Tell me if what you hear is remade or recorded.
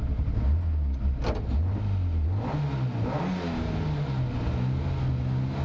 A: recorded